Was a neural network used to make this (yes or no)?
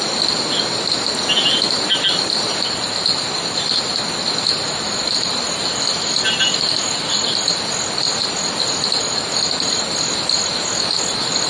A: no